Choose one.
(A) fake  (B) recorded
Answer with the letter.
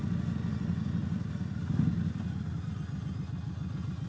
B